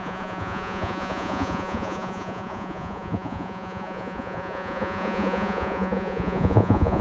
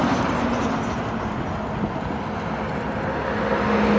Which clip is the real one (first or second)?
second